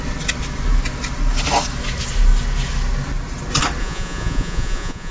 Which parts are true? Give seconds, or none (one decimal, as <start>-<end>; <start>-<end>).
0.0-3.8

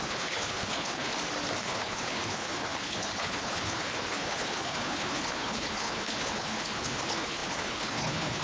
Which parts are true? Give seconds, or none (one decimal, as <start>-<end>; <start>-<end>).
1.1-1.6